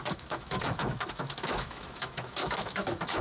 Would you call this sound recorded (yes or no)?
no